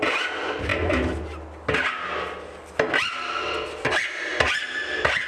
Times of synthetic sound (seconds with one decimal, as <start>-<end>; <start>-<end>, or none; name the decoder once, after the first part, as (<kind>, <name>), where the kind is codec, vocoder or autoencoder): none